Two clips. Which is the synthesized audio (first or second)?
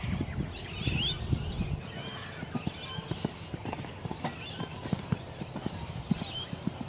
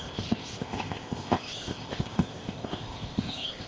second